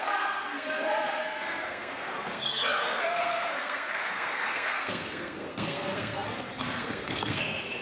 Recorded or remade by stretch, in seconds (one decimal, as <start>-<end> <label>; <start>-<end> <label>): 0.0-7.8 remade